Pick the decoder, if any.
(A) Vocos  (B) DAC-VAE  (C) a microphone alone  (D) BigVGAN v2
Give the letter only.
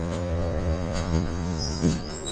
A